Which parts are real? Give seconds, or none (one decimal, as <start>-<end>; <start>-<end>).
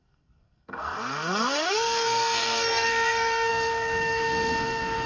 none